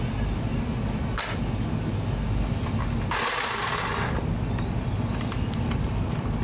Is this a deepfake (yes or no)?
no